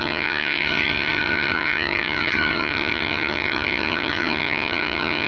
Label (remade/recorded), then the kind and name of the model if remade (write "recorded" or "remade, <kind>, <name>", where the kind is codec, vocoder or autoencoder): remade, vocoder, HiFi-GAN